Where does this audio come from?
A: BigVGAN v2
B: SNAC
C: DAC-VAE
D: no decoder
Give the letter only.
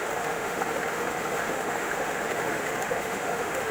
C